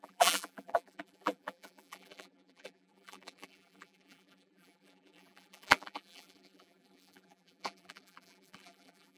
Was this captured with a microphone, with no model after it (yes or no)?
no